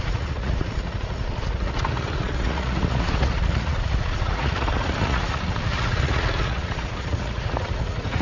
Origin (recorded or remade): remade